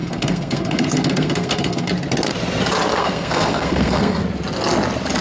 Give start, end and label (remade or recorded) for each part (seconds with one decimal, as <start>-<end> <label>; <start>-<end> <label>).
0.0-1.9 remade; 1.9-2.9 recorded; 2.9-4.2 remade; 4.2-5.2 recorded